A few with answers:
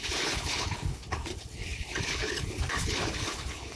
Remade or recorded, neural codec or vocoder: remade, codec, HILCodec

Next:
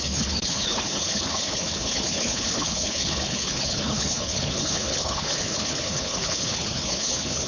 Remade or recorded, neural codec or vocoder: remade, codec, HILCodec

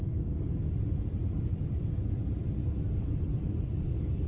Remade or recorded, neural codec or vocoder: recorded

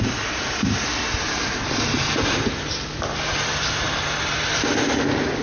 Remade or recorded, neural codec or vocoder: recorded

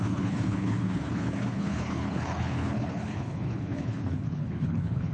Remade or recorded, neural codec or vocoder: remade, codec, HILCodec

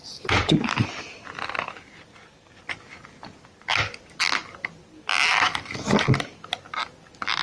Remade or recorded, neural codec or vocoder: recorded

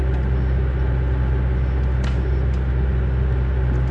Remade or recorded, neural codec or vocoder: recorded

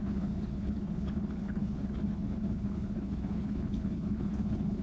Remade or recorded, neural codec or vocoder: remade, codec, HILCodec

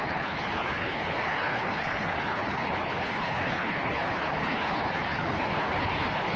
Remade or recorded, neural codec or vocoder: remade, codec, HILCodec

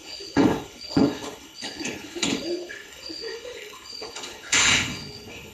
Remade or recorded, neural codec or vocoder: remade, codec, HILCodec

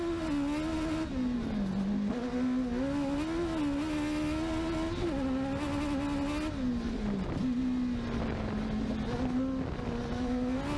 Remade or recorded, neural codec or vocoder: recorded